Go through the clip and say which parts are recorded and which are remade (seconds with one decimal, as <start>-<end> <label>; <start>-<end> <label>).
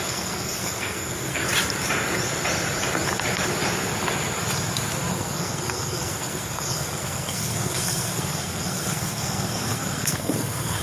0.0-1.5 remade; 1.5-5.1 recorded; 5.1-10.8 remade